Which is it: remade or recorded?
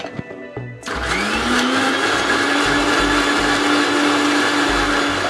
recorded